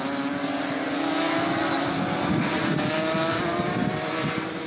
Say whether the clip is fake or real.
real